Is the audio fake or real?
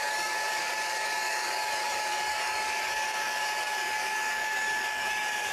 fake